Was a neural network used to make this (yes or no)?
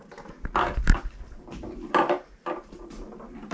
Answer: no